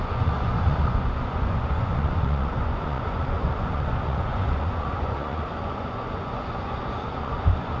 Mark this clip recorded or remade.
remade